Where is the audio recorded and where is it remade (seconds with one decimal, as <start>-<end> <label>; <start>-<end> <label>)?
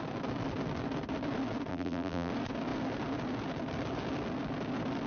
0.0-1.7 recorded; 1.7-2.3 remade; 2.3-5.1 recorded